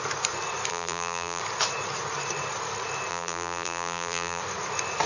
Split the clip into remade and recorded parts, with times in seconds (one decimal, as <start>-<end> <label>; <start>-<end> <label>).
0.0-0.7 recorded; 0.7-1.4 remade; 1.4-3.1 recorded; 3.1-4.4 remade; 4.4-5.1 recorded

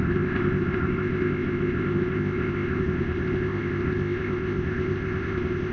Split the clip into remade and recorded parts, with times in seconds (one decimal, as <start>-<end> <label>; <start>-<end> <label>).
0.0-5.7 remade

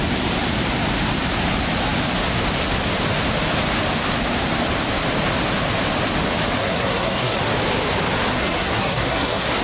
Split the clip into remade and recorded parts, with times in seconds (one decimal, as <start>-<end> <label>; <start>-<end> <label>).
0.0-6.6 recorded; 6.6-7.4 remade; 7.4-8.3 recorded; 8.3-9.6 remade